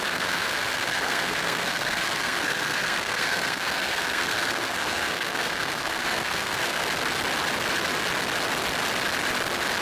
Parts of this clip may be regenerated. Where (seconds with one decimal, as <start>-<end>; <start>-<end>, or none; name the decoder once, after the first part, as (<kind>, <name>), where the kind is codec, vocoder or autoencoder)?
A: 0.0-6.8 (codec, SNAC)